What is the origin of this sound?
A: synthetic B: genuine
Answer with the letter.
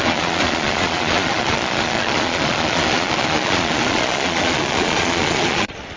A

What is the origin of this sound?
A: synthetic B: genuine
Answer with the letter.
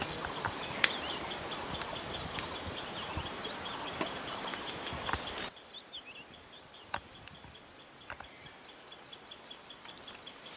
A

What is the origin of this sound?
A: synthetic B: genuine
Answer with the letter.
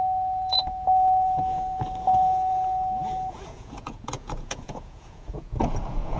A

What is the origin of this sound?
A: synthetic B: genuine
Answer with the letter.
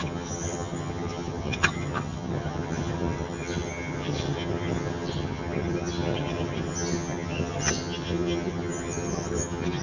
A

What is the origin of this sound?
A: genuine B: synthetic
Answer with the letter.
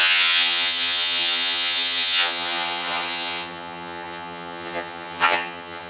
B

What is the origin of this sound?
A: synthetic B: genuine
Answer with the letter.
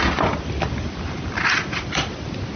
B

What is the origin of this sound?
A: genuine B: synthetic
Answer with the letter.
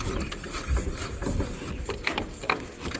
A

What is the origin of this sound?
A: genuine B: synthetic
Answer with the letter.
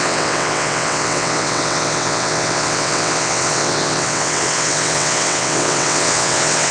B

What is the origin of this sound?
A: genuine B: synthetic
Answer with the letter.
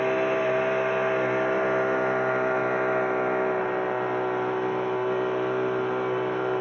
A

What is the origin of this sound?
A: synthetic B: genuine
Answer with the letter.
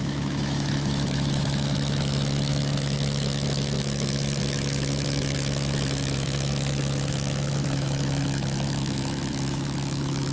A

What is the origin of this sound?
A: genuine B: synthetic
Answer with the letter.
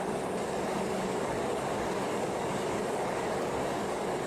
B